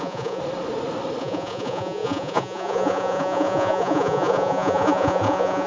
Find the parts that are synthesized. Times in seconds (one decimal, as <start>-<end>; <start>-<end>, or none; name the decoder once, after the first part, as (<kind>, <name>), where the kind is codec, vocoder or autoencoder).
0.0-0.4 (vocoder, Vocos); 1.2-5.7